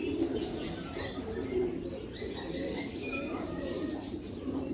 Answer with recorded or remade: remade